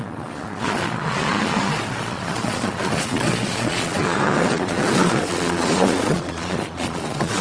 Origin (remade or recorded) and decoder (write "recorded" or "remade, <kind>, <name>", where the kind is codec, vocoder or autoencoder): remade, vocoder, Vocos